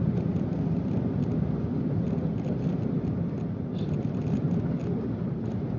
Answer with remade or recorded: recorded